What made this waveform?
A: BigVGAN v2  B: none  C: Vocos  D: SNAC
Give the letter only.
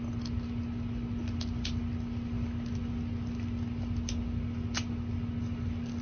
B